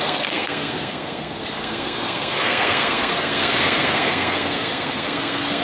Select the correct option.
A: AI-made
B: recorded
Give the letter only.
A